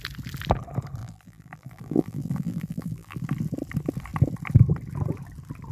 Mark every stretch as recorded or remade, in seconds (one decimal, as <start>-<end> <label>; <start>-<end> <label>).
0.0-1.0 recorded; 1.0-3.2 remade; 3.2-5.7 recorded

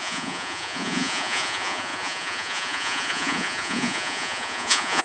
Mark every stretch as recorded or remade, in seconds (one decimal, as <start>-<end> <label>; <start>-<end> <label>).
0.0-5.0 remade

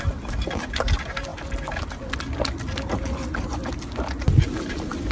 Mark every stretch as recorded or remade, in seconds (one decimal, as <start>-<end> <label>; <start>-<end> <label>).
0.0-5.1 recorded

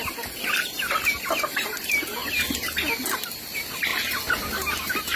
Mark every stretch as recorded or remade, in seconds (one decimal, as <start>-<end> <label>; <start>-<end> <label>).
0.0-2.2 remade; 2.2-3.3 recorded; 3.3-3.9 remade; 3.9-5.2 recorded

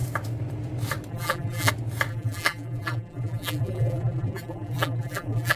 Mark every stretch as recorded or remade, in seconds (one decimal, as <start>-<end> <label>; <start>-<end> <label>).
0.0-1.1 recorded; 1.1-1.7 remade; 1.7-2.1 recorded; 2.1-5.6 remade

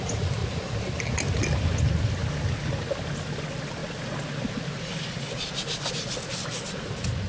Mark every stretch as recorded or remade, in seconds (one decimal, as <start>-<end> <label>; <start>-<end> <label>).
0.0-7.3 recorded